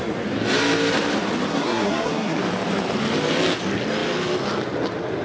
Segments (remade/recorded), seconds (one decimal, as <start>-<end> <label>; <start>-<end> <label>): 0.0-1.5 recorded; 1.5-2.4 remade; 2.4-5.2 recorded